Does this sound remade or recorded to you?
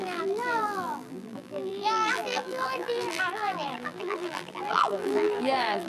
remade